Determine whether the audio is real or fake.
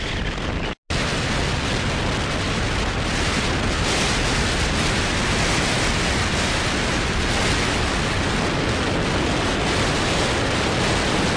real